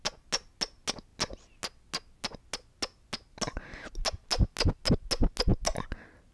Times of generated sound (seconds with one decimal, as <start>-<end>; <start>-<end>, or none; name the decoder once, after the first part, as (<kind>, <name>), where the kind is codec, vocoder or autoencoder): none